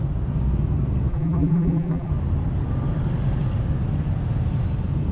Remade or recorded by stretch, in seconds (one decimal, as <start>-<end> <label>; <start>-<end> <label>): 0.0-1.1 recorded; 1.1-2.1 remade; 2.1-5.1 recorded